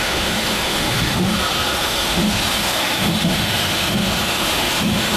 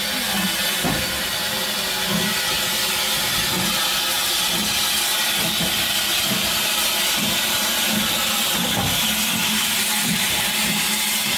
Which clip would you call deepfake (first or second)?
first